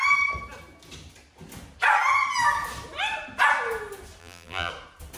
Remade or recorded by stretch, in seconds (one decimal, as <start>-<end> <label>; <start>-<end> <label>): 0.0-4.2 recorded; 4.2-4.7 remade; 4.7-5.2 recorded